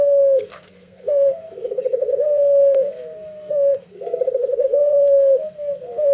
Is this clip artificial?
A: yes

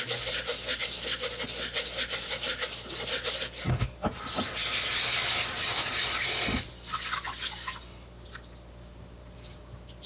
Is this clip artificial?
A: no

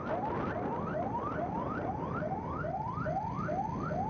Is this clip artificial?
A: no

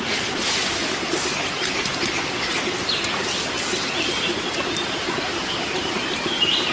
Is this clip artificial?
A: no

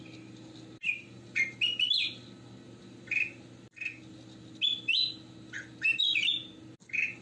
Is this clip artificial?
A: no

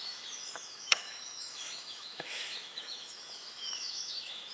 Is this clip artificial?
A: yes